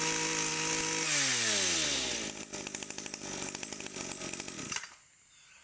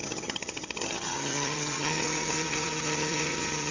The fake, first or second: second